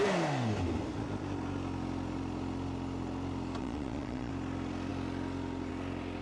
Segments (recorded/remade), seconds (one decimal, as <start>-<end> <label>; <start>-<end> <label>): 0.0-3.6 recorded; 3.6-4.3 remade; 4.3-6.2 recorded